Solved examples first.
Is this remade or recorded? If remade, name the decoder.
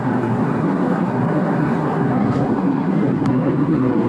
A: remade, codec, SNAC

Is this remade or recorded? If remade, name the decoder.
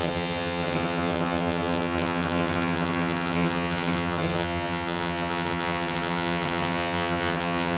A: remade, vocoder, HiFi-GAN